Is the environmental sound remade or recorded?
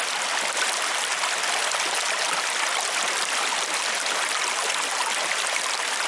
recorded